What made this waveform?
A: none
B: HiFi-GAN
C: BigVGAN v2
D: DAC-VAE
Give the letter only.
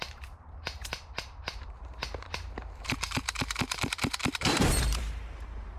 C